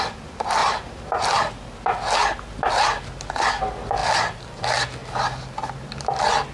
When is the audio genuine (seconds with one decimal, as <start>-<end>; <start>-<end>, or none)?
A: 0.0-4.0; 4.6-5.0; 5.7-6.5